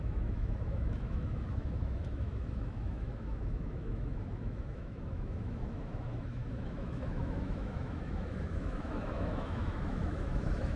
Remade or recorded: remade